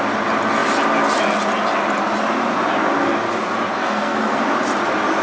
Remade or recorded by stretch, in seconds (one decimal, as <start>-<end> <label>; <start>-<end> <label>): 0.0-3.8 recorded; 3.8-4.4 remade; 4.4-5.2 recorded